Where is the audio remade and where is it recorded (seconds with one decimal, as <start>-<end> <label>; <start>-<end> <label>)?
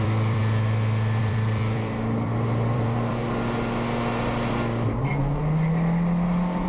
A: 0.0-0.4 remade; 0.4-1.2 recorded; 1.2-3.2 remade; 3.2-6.7 recorded